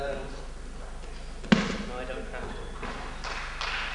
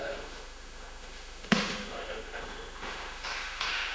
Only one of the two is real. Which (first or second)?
first